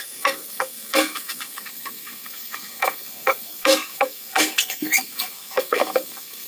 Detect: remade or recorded remade